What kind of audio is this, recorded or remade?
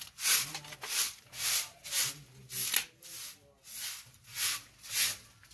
recorded